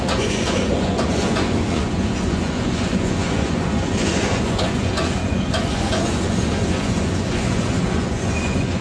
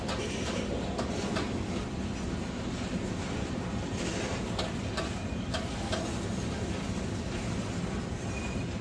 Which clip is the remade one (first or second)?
first